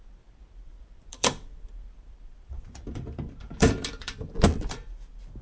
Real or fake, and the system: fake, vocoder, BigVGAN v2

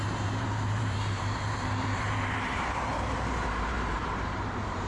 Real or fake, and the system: fake, vocoder, BigVGAN v2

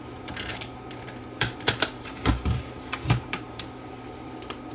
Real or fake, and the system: fake, vocoder, BigVGAN v2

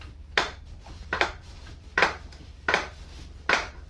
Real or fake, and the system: fake, vocoder, BigVGAN v2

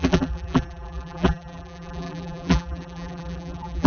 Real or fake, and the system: fake, vocoder, BigVGAN v2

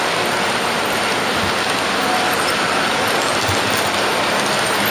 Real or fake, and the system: real